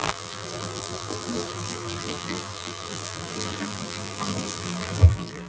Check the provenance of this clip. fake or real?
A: fake